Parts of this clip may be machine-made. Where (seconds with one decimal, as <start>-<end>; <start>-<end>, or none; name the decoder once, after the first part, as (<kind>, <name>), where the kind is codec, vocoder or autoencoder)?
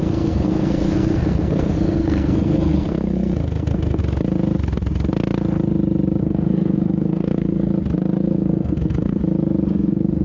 0.0-4.0 (codec, SNAC); 6.2-7.7; 8.2-9.2; 9.7-10.2